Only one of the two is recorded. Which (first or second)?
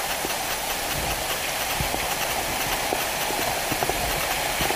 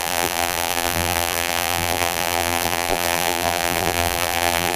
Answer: first